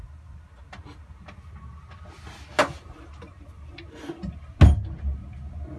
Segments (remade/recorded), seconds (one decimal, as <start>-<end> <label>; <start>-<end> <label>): 0.0-5.8 recorded